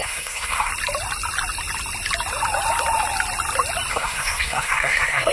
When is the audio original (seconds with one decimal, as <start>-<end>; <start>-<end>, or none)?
0.7-3.9